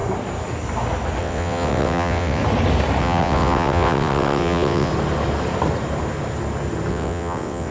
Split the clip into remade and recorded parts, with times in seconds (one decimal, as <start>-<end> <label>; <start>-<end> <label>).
0.0-1.2 recorded; 1.2-2.4 remade; 2.4-3.0 recorded; 3.0-4.9 remade; 4.9-6.9 recorded; 6.9-7.7 remade